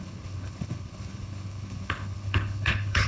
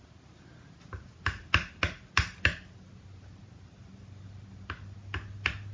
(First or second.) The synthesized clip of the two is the first